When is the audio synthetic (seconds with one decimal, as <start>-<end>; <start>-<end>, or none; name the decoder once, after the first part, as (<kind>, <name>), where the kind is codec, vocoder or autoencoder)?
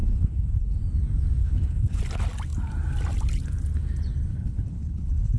0.0-0.8 (codec, HILCodec); 1.4-2.0; 4.3-5.4